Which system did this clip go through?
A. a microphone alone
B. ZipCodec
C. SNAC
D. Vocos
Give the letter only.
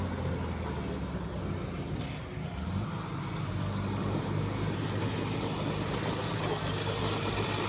A